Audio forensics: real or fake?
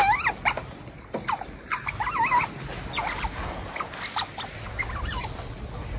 real